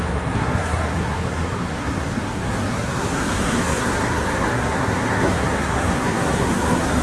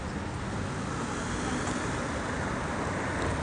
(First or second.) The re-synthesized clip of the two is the first